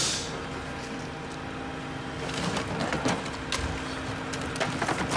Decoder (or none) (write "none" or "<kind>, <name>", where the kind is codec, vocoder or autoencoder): none